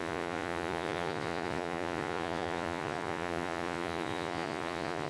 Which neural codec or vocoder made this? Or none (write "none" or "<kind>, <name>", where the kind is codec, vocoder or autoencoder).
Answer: vocoder, Vocos